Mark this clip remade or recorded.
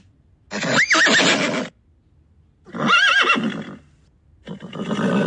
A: recorded